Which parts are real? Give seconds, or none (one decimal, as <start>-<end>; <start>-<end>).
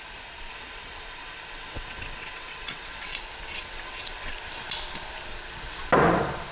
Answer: 0.0-0.5; 3.2-3.6; 4.3-6.5